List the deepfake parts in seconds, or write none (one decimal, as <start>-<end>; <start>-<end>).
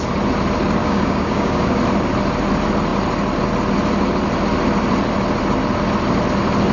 0.8-1.8